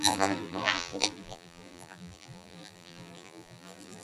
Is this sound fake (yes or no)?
yes